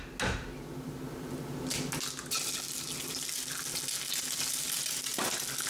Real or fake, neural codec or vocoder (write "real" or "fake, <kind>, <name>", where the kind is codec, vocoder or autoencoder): real